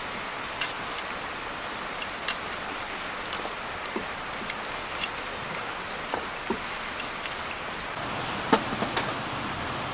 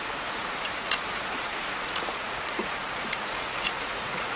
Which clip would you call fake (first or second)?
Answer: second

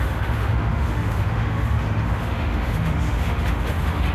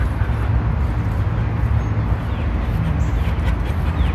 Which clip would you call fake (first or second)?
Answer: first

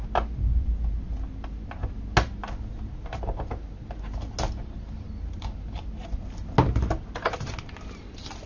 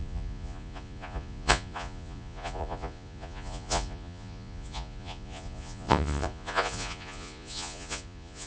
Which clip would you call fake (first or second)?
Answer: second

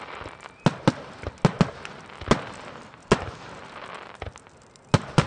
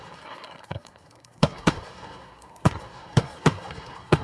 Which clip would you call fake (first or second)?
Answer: second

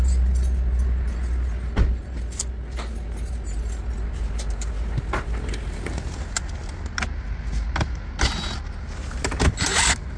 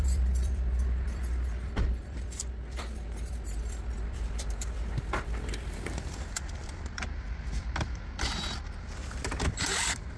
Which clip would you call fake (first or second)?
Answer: second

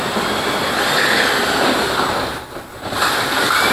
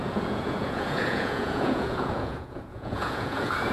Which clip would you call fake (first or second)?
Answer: second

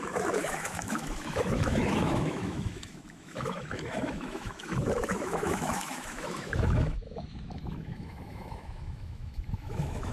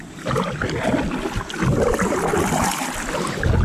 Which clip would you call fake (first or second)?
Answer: first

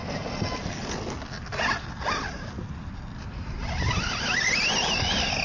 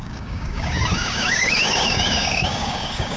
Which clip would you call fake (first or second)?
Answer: second